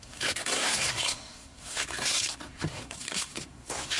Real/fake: fake